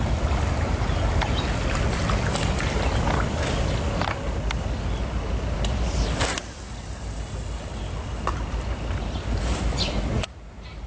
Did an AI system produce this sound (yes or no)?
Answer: no